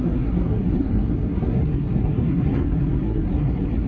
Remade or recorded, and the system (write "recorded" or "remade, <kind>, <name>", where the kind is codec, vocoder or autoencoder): remade, codec, SNAC